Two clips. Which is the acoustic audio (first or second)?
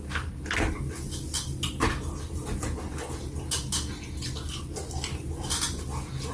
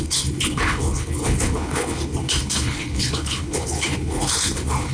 first